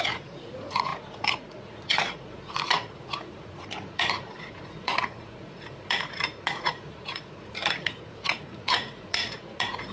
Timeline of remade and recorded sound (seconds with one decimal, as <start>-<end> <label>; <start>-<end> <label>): 0.0-9.9 remade